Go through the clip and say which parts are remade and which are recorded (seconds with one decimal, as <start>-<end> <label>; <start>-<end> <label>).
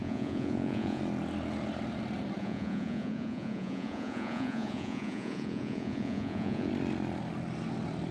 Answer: 0.0-1.0 remade; 1.0-2.4 recorded; 2.4-6.7 remade; 6.7-8.1 recorded